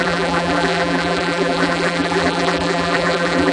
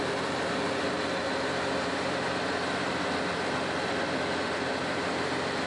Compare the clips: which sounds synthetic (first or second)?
first